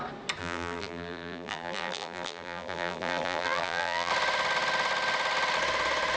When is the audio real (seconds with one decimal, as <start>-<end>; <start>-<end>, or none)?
0.0-0.4; 4.1-6.2